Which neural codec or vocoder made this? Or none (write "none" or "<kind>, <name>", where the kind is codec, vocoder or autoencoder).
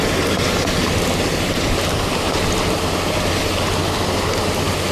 none